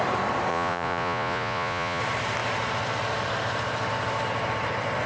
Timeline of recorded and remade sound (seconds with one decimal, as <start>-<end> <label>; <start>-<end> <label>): 0.0-0.5 recorded; 0.5-2.0 remade; 2.0-5.1 recorded